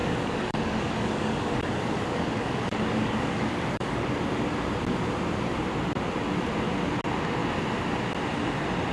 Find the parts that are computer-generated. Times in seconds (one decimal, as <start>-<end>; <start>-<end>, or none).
0.0-4.1